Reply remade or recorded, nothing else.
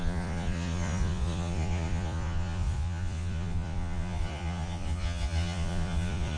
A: remade